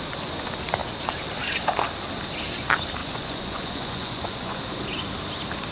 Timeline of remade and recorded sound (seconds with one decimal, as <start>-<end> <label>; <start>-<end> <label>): 0.0-3.0 recorded; 3.0-4.6 remade; 4.6-5.7 recorded